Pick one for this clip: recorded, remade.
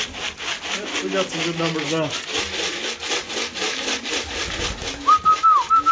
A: recorded